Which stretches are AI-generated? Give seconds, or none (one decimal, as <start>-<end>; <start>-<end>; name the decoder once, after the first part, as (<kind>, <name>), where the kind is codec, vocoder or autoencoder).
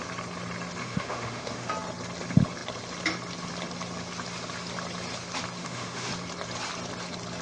0.8-1.7 (autoencoder, DAC-VAE); 5.6-6.1